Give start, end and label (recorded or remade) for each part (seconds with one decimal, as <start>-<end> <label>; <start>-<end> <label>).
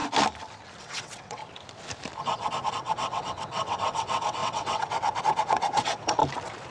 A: 0.0-0.8 recorded; 0.8-1.4 remade; 1.4-2.7 recorded; 2.7-6.2 remade; 6.2-6.7 recorded